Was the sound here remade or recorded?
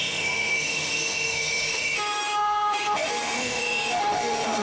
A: remade